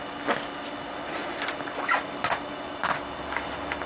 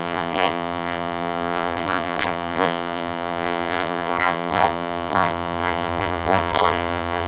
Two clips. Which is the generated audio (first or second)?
second